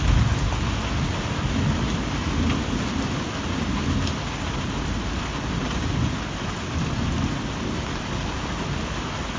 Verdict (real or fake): real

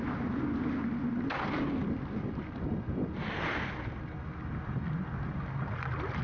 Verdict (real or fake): real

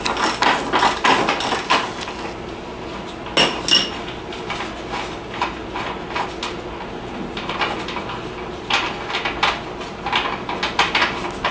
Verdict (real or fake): real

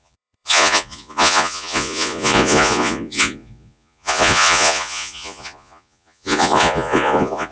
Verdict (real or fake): fake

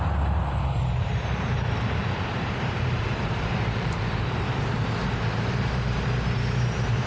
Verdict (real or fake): fake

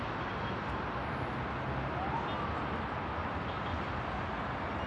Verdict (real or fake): real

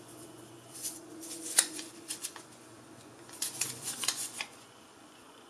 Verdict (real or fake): fake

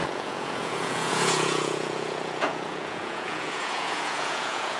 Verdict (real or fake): fake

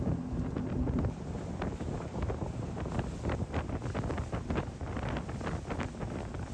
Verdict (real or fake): real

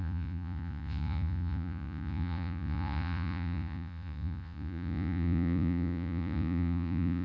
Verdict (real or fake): fake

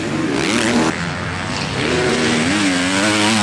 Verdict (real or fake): real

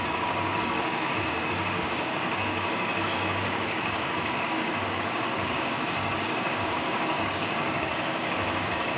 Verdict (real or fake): fake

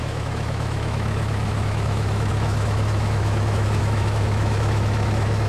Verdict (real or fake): fake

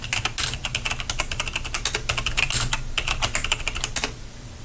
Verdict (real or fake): real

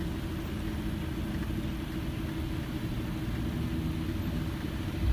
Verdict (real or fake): real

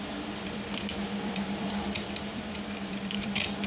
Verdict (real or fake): fake